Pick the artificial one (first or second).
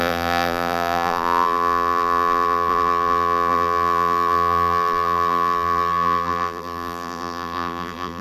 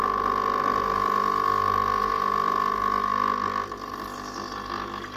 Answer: first